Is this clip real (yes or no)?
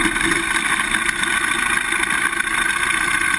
yes